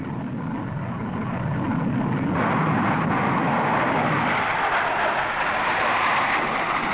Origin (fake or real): real